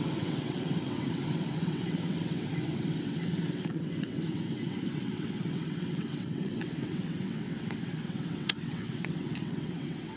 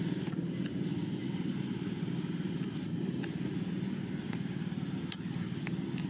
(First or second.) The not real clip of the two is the first